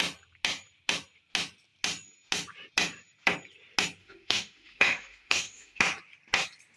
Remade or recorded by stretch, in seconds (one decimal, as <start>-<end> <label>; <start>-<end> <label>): 0.0-4.0 recorded; 4.0-5.8 remade; 5.8-6.8 recorded